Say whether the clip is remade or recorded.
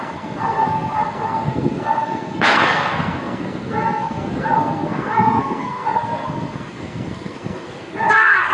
remade